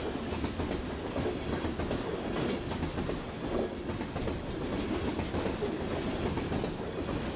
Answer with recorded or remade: recorded